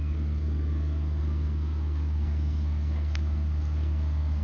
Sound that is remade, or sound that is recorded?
remade